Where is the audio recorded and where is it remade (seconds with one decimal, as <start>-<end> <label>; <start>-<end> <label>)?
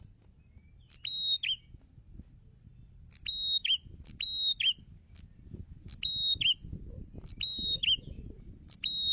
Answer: 0.0-9.1 recorded